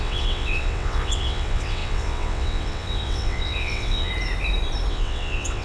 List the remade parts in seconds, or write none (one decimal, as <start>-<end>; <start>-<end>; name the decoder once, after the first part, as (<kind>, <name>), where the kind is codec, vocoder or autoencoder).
0.0-4.1 (vocoder, WaveNeXt); 4.9-5.6

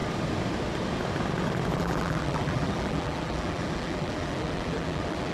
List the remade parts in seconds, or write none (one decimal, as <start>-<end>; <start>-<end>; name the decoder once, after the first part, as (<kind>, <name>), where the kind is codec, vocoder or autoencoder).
1.8-5.3 (vocoder, BigVGAN v2)

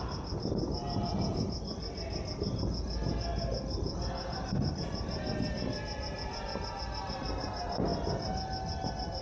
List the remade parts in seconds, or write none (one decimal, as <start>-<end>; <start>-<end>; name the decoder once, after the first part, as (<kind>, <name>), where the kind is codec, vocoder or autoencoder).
none